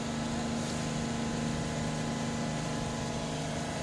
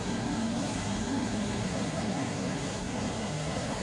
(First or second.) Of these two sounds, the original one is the first